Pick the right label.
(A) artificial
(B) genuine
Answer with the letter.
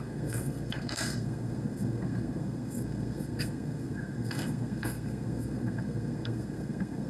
A